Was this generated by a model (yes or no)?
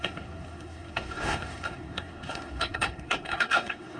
yes